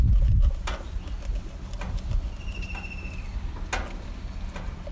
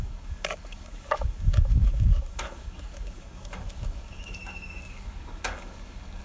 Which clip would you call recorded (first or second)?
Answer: first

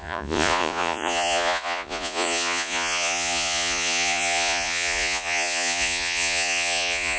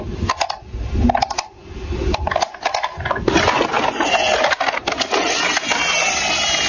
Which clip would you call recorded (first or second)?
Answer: second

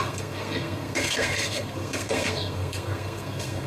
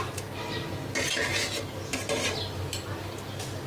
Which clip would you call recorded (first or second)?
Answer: second